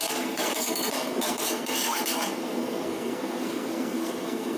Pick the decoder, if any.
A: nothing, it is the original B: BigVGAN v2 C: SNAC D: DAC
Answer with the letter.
C